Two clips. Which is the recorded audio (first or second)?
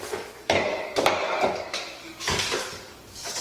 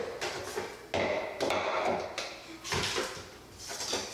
second